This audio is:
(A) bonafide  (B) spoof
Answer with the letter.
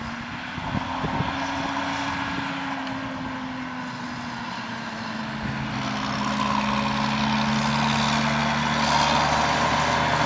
A